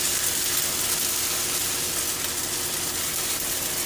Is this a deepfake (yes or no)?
no